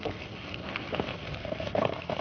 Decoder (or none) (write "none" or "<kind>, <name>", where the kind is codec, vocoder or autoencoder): codec, SNAC